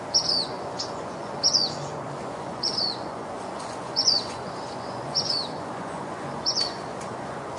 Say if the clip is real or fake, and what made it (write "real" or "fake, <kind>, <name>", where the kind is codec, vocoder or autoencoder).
fake, vocoder, Vocos